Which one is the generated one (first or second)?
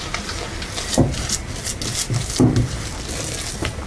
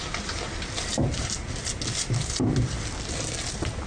second